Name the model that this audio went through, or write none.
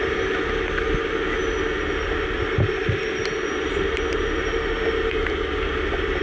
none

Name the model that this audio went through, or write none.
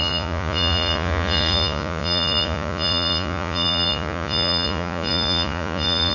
vocoder, Vocos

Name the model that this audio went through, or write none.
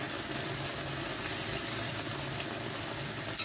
none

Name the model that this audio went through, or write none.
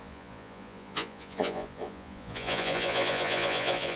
vocoder, Vocos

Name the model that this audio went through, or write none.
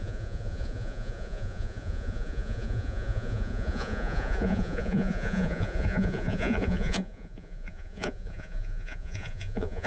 vocoder, Vocos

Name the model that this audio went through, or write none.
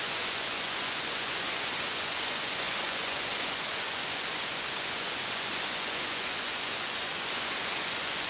vocoder, Vocos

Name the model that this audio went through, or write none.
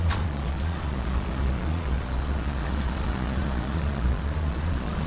vocoder, Vocos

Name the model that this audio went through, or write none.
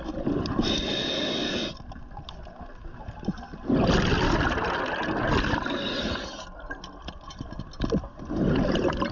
none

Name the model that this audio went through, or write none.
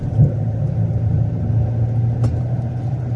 none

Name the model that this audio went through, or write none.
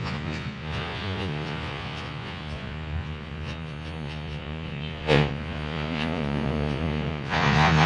vocoder, Vocos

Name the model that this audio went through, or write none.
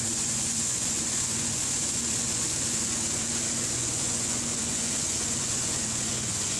vocoder, Vocos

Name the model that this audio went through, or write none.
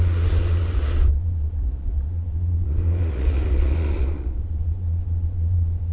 vocoder, Vocos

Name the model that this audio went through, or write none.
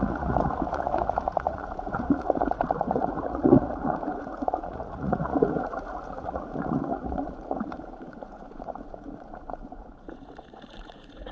vocoder, Vocos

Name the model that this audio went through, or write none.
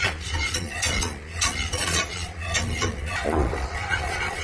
vocoder, Vocos